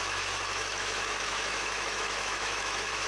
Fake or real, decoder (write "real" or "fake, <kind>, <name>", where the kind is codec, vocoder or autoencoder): fake, autoencoder, DAC-VAE